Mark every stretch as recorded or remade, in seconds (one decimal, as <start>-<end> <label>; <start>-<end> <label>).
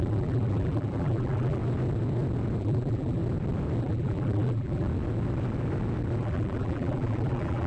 0.0-1.6 remade; 1.6-2.6 recorded; 2.6-3.2 remade; 3.2-3.8 recorded; 3.8-4.9 remade; 4.9-6.2 recorded; 6.2-7.7 remade